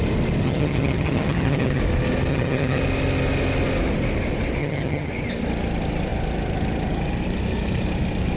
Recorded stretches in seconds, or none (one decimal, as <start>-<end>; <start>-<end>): 0.0-0.4; 1.8-2.3; 2.8-4.6; 5.1-8.4